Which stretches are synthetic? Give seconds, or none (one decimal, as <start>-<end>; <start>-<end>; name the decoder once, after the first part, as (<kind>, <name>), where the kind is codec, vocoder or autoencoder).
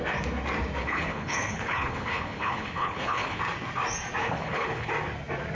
0.8-3.4 (codec, HILCodec); 4.2-4.9